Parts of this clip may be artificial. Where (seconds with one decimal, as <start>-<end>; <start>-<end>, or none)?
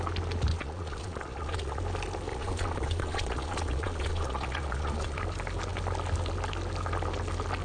0.5-1.8; 2.3-5.2